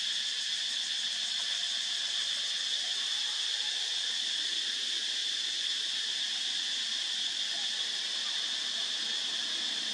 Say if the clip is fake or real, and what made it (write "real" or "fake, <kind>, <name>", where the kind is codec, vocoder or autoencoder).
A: real